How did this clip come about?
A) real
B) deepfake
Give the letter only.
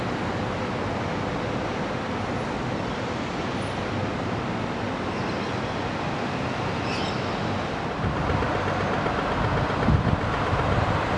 A